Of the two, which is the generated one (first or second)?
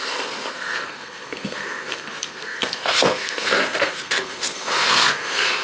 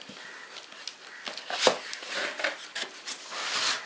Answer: first